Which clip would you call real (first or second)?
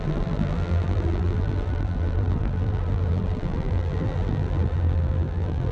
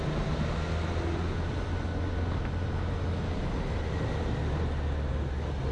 second